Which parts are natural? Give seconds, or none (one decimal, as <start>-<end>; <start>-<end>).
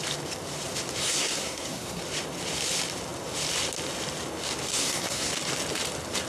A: 0.0-1.0; 2.0-4.7; 5.3-6.3